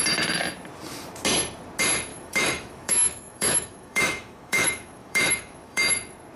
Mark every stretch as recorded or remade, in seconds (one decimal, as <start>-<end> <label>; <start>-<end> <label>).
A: 0.0-2.1 recorded; 2.1-5.9 remade; 5.9-6.4 recorded